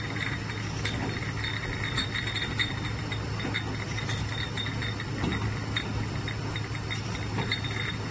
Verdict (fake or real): real